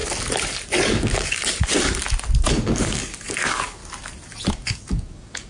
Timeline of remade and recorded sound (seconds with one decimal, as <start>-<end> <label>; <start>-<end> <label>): 0.0-0.8 recorded; 0.8-1.4 remade; 1.4-2.5 recorded; 2.5-3.8 remade; 3.8-4.5 recorded; 4.5-5.5 remade